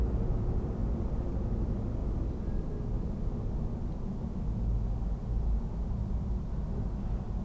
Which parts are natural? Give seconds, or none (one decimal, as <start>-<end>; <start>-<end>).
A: 0.0-0.8; 1.4-2.0; 4.0-7.4